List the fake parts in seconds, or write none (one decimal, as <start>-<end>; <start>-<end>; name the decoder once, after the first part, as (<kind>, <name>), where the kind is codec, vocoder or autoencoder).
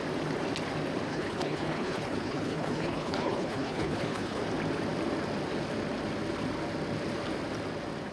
1.1-4.4 (codec, HILCodec)